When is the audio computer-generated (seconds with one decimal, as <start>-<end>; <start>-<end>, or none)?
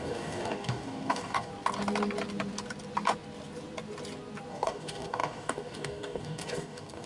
0.0-1.5; 4.5-7.1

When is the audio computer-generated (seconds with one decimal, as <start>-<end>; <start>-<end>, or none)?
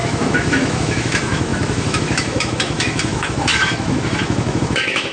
0.0-5.1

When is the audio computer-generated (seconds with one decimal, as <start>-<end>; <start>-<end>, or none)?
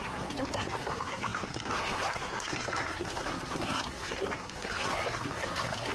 0.0-5.9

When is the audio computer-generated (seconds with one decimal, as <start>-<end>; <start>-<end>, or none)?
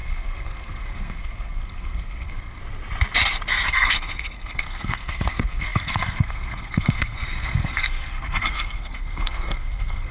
0.0-2.6; 3.7-10.1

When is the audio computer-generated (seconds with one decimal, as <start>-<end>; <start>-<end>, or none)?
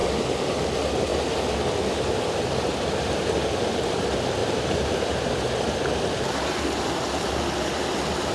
4.4-5.4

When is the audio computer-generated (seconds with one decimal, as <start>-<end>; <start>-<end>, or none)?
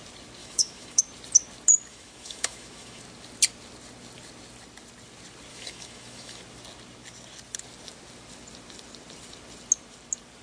0.4-1.0; 1.9-3.0; 5.5-6.4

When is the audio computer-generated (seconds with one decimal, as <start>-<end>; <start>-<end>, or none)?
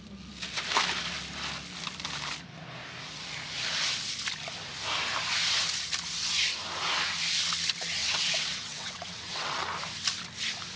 8.0-9.6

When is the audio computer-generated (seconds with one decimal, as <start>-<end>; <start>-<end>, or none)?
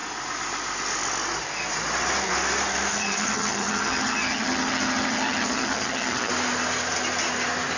2.9-6.3